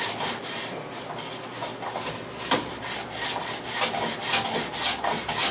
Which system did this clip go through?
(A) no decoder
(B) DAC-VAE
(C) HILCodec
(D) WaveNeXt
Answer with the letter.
A